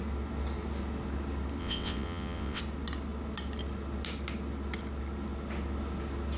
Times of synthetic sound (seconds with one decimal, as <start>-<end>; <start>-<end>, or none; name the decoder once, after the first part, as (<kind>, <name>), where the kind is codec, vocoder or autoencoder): 1.6-2.6 (vocoder, WaveNeXt)